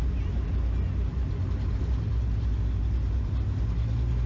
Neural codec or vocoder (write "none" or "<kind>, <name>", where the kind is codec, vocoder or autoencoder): none